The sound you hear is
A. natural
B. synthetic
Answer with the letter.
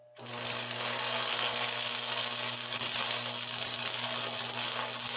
A